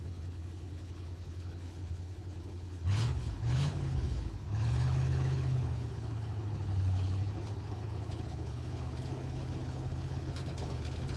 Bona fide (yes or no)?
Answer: no